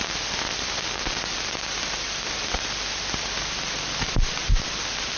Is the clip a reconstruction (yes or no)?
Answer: yes